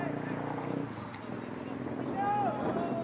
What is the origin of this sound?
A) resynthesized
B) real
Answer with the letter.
B